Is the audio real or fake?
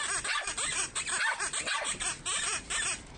real